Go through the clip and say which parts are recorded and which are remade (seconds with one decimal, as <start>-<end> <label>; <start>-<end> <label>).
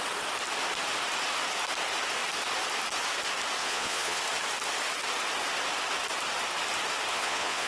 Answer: 0.0-3.6 recorded; 3.6-4.2 remade; 4.2-7.1 recorded; 7.1-7.7 remade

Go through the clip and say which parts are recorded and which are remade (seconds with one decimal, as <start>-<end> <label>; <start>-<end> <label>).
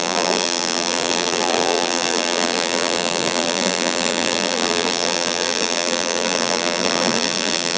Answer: 0.0-7.8 remade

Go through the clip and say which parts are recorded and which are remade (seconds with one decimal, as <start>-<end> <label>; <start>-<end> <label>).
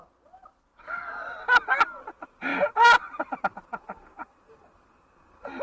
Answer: 0.0-0.7 recorded; 0.7-1.4 remade; 1.4-2.5 recorded; 2.5-4.5 remade; 4.5-5.6 recorded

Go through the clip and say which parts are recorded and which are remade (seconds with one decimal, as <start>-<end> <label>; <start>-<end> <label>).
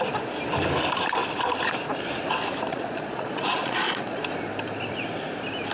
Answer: 0.0-2.7 recorded; 2.7-4.2 remade; 4.2-5.7 recorded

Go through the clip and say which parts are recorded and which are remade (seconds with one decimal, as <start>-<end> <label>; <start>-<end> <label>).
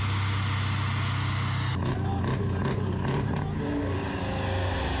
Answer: 0.0-5.0 recorded